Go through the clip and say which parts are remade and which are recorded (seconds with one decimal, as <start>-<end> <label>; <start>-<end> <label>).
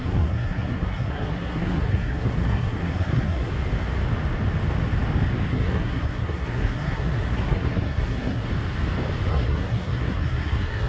0.0-3.5 remade; 3.5-5.5 recorded; 5.5-8.5 remade; 8.5-9.3 recorded; 9.3-10.9 remade